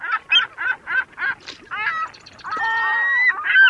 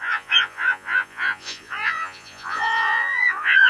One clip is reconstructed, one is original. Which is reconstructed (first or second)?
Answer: second